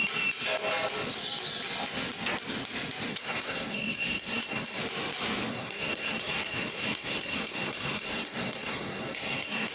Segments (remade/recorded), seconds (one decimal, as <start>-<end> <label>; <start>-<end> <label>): 0.0-3.1 recorded; 3.1-4.8 remade; 4.8-5.5 recorded; 5.5-9.7 remade